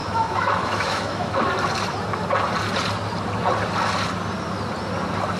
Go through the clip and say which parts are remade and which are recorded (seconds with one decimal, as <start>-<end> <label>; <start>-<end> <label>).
0.0-1.5 remade; 1.5-5.4 recorded